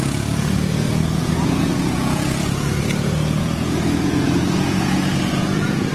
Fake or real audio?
fake